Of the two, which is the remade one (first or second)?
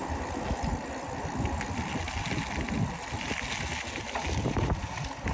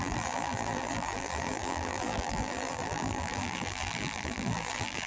second